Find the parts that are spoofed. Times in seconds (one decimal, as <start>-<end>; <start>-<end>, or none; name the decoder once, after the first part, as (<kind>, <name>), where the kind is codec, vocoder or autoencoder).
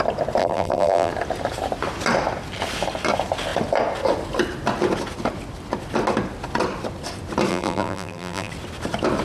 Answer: 0.4-1.1 (vocoder, BigVGAN v2); 7.5-8.5